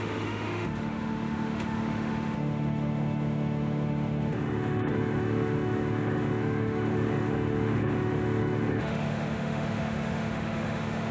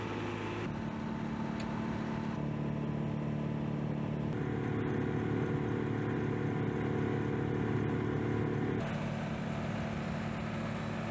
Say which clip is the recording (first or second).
second